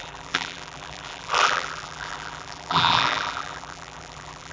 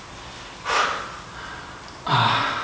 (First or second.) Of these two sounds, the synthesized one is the first